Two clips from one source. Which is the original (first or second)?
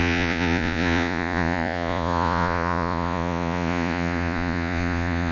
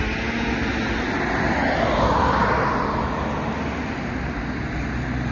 second